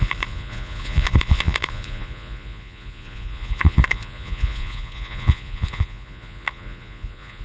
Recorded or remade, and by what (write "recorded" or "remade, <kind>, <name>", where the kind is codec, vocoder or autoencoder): remade, vocoder, Vocos